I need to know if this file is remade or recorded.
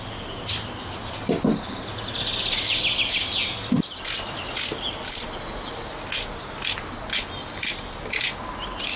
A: recorded